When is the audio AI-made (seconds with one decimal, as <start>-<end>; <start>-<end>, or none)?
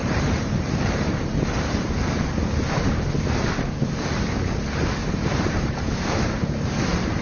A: 0.0-3.1; 5.0-6.2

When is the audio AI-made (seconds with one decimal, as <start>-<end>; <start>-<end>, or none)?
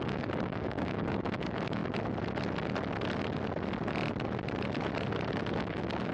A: 0.0-1.8; 5.5-6.1